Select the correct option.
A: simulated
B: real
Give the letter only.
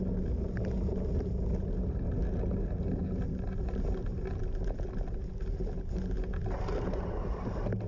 B